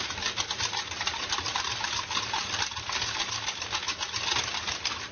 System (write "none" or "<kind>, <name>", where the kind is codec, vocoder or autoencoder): none